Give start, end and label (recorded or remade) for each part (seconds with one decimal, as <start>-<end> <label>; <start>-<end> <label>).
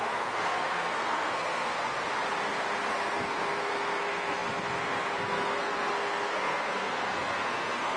0.0-2.0 remade; 2.0-2.9 recorded; 2.9-8.0 remade